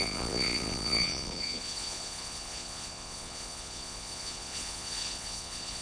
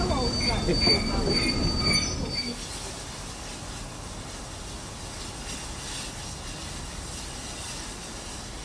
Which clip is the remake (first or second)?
first